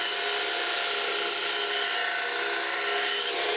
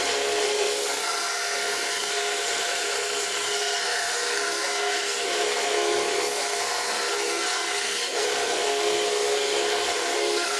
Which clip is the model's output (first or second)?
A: second